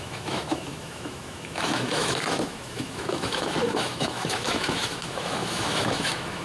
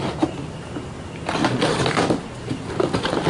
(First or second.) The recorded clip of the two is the second